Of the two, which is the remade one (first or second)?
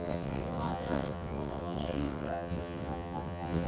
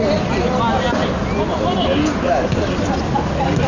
first